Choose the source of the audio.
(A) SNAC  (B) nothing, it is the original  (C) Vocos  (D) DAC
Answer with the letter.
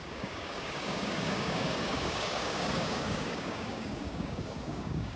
D